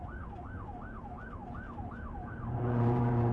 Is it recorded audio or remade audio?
remade